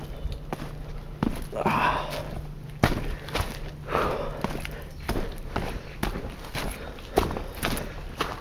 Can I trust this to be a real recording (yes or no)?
yes